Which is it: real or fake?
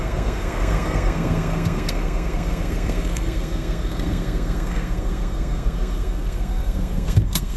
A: fake